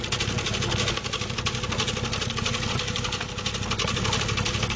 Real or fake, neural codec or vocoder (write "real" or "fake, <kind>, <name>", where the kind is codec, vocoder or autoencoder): real